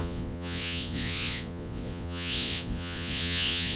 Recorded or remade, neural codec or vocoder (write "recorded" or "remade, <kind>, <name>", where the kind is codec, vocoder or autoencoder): remade, vocoder, Vocos